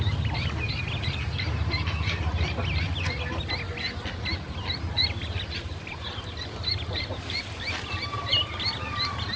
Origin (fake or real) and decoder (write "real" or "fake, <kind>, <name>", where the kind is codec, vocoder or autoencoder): real